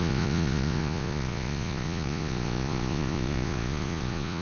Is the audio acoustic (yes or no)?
no